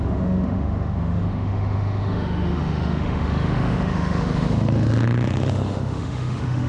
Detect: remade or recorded remade